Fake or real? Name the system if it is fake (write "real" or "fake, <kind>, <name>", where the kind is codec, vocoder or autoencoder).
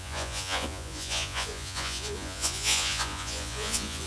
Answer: fake, vocoder, Vocos